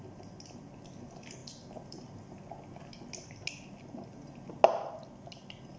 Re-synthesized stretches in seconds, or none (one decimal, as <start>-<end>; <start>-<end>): none